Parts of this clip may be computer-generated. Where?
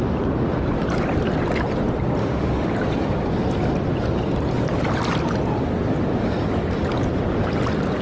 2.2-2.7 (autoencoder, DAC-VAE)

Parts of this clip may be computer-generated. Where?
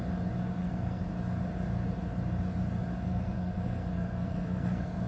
0.5-1.0 (codec, SNAC); 3.1-5.1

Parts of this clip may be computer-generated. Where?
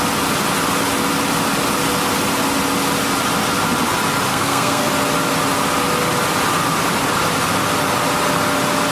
4.3-4.9 (codec, SNAC)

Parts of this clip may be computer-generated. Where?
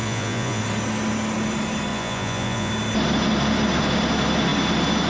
0.0-0.6 (vocoder, Vocos); 1.9-2.7